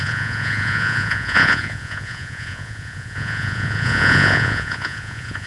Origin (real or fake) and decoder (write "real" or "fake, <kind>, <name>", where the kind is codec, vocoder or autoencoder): fake, vocoder, Vocos